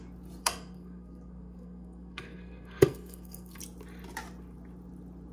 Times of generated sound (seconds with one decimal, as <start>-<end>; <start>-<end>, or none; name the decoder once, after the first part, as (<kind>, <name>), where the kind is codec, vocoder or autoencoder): 0.4-3.6 (codec, SNAC)